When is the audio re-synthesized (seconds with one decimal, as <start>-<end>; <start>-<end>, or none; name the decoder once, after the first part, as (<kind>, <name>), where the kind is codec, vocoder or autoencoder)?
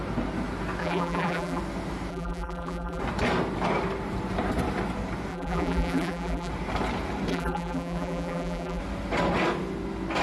0.8-1.6 (vocoder, BigVGAN v2); 2.1-3.0; 5.3-6.5; 7.3-8.8